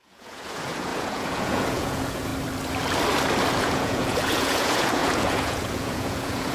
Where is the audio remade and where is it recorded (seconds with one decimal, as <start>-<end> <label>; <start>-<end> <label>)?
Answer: 0.0-2.3 remade; 2.3-3.6 recorded; 3.6-6.5 remade